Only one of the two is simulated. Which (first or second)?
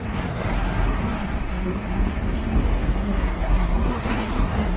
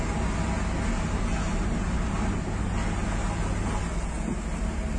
first